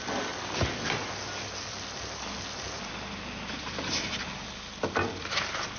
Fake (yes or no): no